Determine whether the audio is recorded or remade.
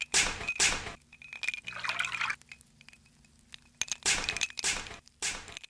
recorded